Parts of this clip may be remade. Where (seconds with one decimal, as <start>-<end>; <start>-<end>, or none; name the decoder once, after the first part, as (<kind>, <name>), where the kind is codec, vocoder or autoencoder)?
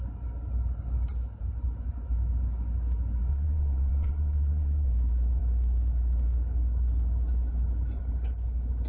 3.3-4.9 (vocoder, WaveNeXt)